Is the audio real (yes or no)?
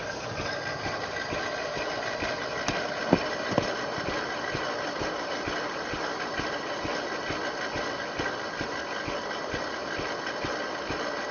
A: yes